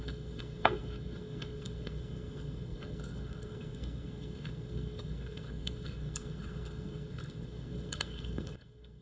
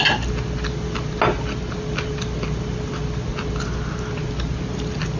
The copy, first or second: first